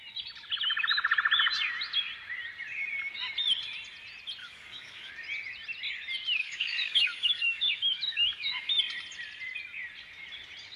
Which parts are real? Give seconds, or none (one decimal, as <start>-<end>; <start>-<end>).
0.0-4.4; 5.1-6.4; 8.8-10.8

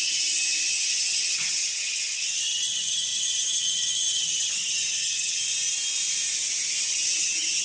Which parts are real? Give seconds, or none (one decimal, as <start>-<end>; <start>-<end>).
5.4-6.8

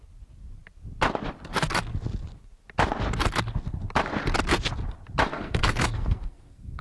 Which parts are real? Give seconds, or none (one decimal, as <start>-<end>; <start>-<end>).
0.0-5.3

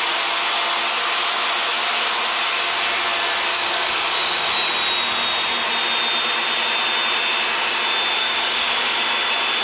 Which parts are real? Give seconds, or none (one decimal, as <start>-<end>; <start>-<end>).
0.0-3.5; 4.5-8.2; 9.0-9.6

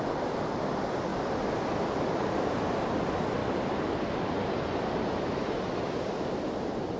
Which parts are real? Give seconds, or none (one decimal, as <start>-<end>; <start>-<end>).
0.0-1.1; 2.4-3.4; 5.5-7.0

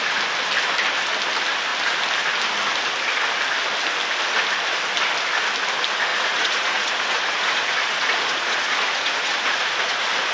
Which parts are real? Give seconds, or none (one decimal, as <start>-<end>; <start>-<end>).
0.0-6.1

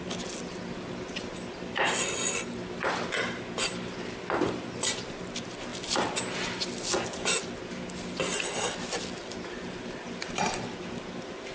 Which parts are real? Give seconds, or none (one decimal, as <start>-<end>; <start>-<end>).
0.0-11.5